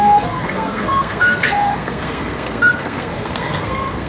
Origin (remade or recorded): remade